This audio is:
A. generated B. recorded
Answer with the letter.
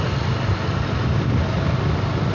B